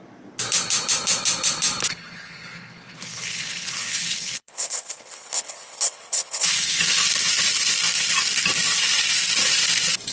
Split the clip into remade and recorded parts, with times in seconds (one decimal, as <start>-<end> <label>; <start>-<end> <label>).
0.0-1.8 recorded; 1.8-6.8 remade; 6.8-10.1 recorded